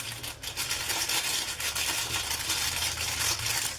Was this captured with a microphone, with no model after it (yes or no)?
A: yes